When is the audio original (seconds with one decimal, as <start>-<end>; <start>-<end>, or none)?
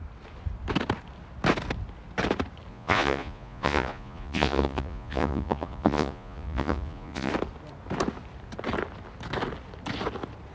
0.0-2.7; 7.3-10.5